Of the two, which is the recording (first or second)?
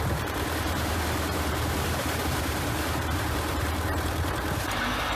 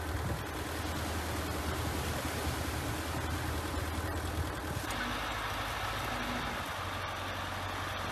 second